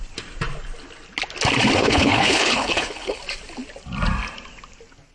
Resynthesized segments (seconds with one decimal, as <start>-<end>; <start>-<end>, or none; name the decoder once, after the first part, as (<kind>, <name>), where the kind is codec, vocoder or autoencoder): 1.8-3.2 (codec, HILCodec)